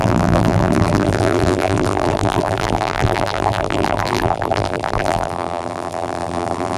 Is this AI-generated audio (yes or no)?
yes